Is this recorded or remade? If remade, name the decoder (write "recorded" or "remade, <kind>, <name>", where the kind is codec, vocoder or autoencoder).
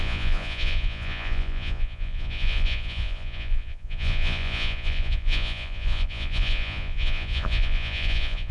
remade, vocoder, Vocos